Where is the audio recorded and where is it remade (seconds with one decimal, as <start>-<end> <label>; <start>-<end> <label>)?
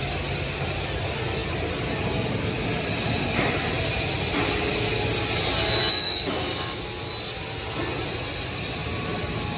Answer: 0.0-5.9 recorded; 5.9-6.8 remade; 6.8-9.6 recorded